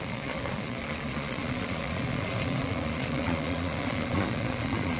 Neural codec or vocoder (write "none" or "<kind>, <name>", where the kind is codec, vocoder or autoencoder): vocoder, Vocos